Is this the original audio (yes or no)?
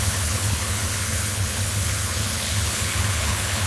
no